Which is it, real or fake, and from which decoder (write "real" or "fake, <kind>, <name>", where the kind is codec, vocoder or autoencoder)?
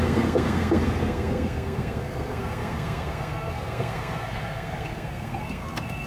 fake, codec, SNAC